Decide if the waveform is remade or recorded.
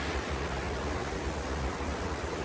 remade